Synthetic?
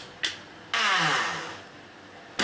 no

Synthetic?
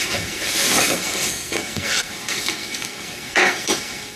yes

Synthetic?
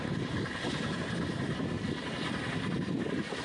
no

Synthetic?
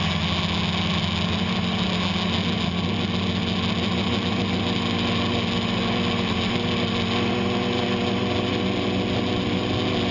no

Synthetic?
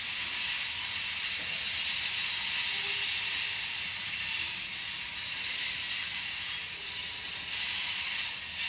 no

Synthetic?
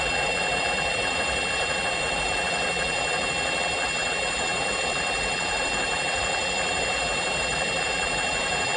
yes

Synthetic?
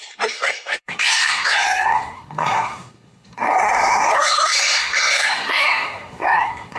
yes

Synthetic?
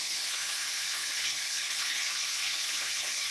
yes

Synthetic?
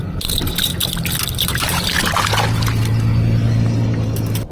no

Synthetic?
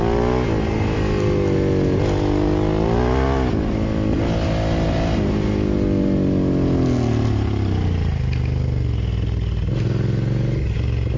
no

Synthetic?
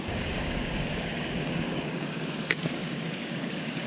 yes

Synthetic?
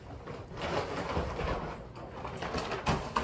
no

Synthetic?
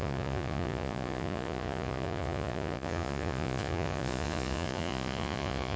yes